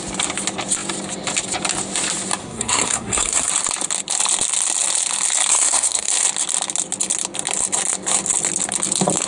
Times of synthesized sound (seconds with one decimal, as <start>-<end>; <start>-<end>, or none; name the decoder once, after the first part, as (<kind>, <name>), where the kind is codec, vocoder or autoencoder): 2.4-3.5 (codec, SNAC); 5.5-6.1